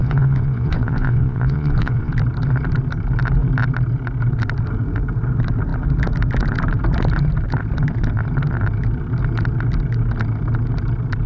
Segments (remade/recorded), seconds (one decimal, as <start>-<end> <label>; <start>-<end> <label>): 0.0-2.1 remade; 2.1-11.3 recorded

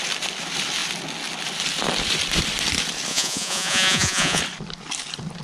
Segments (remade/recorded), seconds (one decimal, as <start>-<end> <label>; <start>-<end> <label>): 0.0-3.1 recorded; 3.1-4.4 remade; 4.4-5.4 recorded

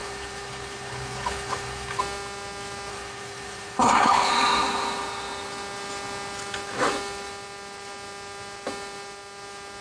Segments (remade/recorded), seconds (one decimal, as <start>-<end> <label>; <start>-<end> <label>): 0.0-2.0 remade; 2.0-2.9 recorded; 2.9-4.3 remade; 4.3-9.8 recorded

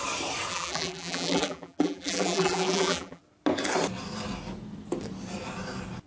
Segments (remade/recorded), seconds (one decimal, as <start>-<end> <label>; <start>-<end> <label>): 0.0-0.5 recorded; 0.5-3.2 remade; 3.2-6.1 recorded

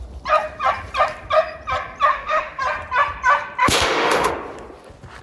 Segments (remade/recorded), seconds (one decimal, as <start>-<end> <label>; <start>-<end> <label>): 0.0-2.1 recorded; 2.1-2.6 remade; 2.6-3.6 recorded; 3.6-4.3 remade; 4.3-5.2 recorded

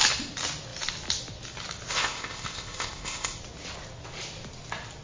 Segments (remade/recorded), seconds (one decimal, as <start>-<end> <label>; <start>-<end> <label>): 0.0-1.9 recorded; 1.9-3.4 remade; 3.4-5.0 recorded

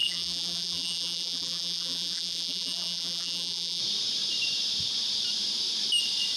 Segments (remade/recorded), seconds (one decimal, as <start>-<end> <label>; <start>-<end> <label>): 0.0-3.8 remade; 3.8-6.4 recorded